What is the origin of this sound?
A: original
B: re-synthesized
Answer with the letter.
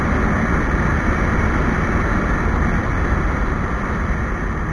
A